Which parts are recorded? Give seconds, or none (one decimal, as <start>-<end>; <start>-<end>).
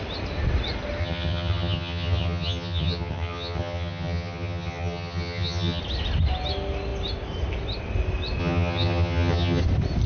0.0-1.0; 5.8-8.4; 9.6-10.1